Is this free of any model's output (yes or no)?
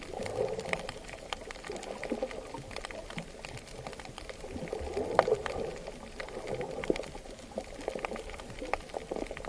yes